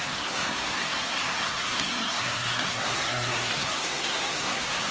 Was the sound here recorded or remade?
remade